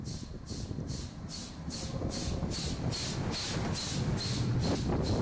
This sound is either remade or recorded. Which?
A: recorded